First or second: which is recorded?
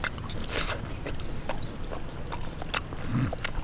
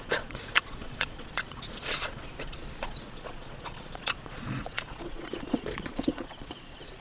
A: first